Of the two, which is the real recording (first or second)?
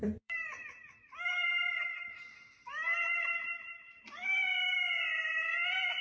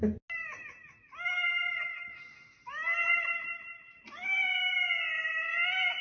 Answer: second